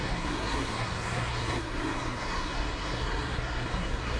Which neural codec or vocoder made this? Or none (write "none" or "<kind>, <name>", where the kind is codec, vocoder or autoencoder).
codec, SNAC